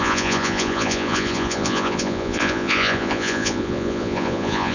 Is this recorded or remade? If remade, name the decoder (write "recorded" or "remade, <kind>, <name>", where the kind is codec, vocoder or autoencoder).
remade, vocoder, Vocos